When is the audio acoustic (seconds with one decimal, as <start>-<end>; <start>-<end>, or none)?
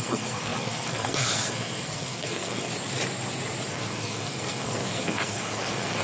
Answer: 2.7-3.7